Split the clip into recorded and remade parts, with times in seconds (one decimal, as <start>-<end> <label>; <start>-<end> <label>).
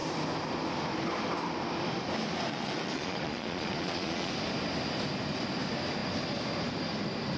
0.0-2.5 recorded; 2.5-4.3 remade; 4.3-7.4 recorded